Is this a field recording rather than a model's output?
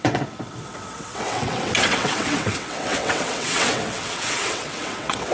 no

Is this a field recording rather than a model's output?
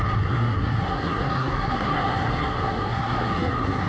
no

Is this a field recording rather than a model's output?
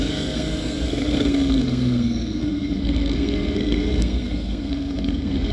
no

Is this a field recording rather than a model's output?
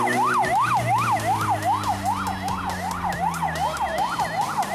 yes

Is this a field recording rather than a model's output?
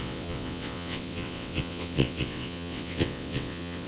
no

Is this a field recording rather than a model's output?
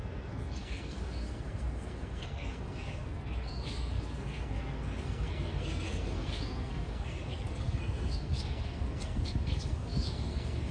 no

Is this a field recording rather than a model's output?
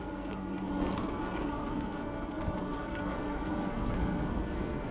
no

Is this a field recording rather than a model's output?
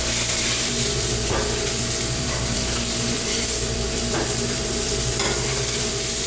no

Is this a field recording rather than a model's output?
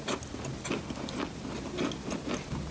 yes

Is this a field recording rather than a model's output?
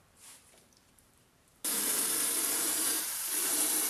no